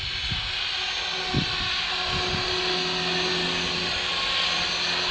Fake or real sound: real